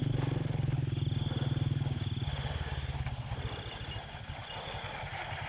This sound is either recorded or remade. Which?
recorded